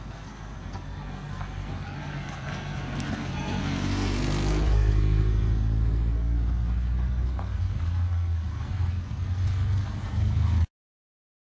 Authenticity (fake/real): fake